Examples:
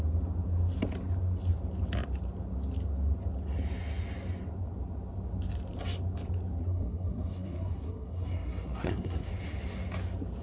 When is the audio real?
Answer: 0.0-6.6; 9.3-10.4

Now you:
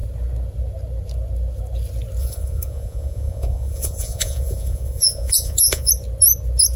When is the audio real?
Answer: 0.0-2.2; 5.9-6.8

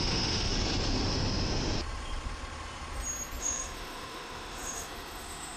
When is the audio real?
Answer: 0.5-3.4

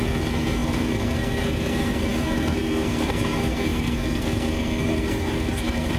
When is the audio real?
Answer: none